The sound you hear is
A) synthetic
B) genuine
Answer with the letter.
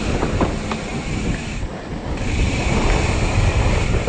B